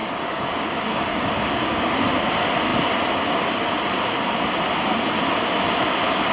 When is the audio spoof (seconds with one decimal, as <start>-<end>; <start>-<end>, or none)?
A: 0.0-1.9

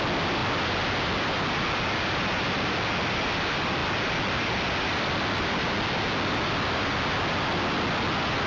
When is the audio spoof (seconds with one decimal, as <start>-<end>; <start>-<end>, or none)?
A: none